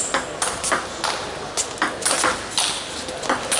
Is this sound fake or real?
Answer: real